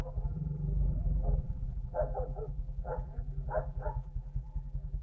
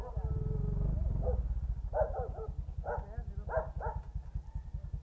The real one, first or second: second